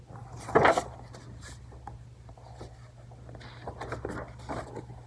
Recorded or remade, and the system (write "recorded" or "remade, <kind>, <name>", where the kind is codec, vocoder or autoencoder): recorded